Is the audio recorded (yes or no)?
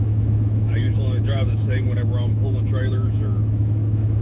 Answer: no